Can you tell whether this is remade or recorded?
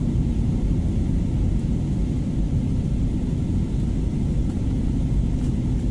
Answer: recorded